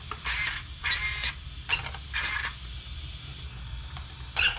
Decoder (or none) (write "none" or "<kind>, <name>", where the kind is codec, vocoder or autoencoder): none